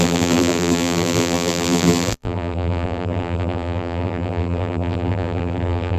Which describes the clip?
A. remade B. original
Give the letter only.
A